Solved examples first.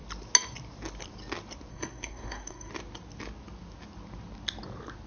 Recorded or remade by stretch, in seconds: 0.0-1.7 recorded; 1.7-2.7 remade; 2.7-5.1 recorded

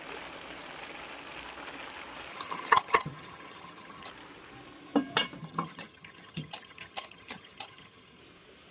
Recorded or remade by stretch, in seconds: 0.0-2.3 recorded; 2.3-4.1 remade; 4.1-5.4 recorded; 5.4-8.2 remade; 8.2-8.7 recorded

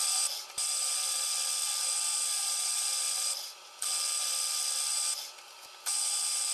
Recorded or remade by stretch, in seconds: 0.0-6.5 recorded

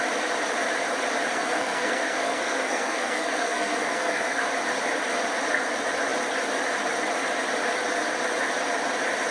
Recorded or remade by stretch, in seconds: 0.0-1.3 recorded; 1.3-4.4 remade; 4.4-9.3 recorded

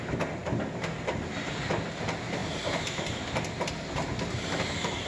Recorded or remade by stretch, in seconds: 0.0-5.1 recorded